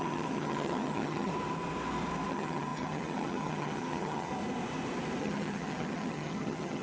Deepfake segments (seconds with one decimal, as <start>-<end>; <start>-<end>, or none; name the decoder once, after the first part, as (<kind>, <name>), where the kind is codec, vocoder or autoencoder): 0.0-1.3 (vocoder, HiFi-GAN); 2.3-4.3; 5.2-6.8